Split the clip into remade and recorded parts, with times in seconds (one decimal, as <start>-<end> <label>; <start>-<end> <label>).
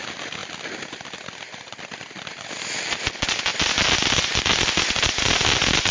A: 0.0-5.9 recorded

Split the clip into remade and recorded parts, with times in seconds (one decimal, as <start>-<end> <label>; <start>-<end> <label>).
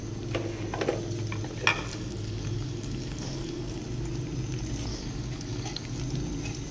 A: 0.0-1.9 recorded; 1.9-3.8 remade; 3.8-4.9 recorded; 4.9-6.0 remade; 6.0-6.7 recorded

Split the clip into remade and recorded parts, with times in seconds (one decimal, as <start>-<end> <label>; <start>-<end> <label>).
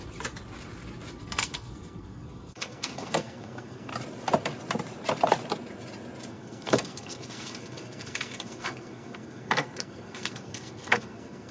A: 0.0-1.2 recorded; 1.2-3.9 remade; 3.9-6.3 recorded; 6.3-11.5 remade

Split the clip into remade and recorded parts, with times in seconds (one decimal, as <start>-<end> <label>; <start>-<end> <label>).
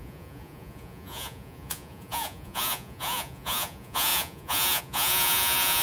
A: 0.0-5.8 remade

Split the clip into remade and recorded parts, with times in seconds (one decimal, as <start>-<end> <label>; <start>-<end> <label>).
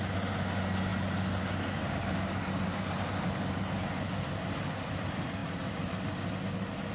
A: 0.0-6.9 recorded